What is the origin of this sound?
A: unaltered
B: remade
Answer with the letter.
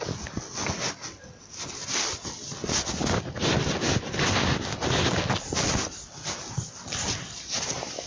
A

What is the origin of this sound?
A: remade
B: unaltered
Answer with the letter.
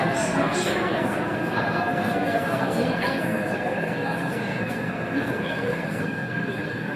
A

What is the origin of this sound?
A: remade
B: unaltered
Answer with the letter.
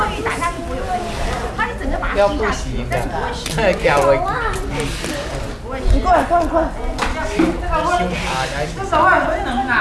B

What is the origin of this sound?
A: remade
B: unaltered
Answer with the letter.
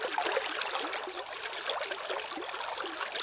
B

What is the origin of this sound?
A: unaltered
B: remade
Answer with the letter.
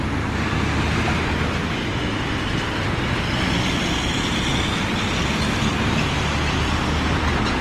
A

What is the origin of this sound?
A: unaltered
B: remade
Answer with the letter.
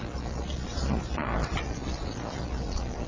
B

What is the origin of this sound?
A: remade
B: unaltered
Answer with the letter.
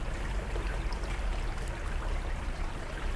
B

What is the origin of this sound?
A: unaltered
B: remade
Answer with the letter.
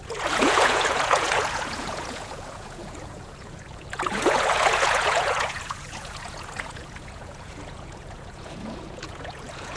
B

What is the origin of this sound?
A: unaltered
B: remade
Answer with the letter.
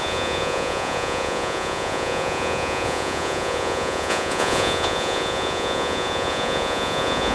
B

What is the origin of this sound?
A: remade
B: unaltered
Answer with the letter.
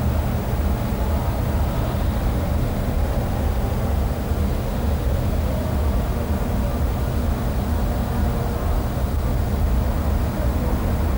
B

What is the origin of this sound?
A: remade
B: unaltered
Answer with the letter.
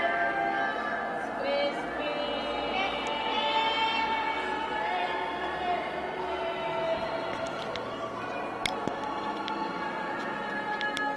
B